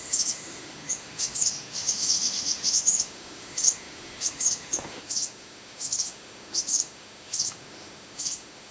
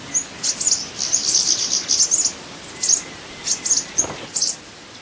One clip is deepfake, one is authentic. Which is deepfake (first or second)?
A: first